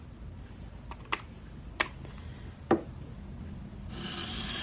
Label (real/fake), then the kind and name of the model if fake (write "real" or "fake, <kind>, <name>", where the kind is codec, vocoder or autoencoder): real